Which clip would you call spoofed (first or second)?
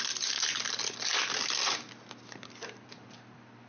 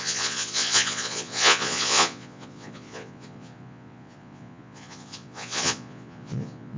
second